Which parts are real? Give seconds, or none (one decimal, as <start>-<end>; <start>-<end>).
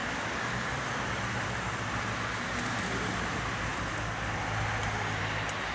2.0-5.7